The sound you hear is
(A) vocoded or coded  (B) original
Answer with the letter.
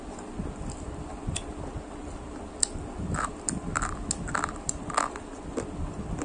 B